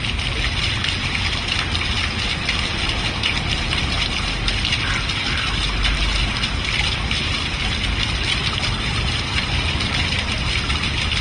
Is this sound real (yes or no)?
yes